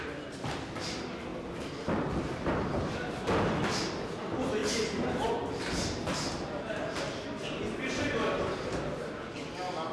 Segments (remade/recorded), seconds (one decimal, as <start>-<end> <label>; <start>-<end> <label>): 0.0-9.9 recorded